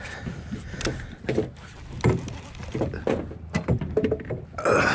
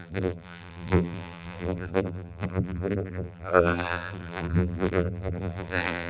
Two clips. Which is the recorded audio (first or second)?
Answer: first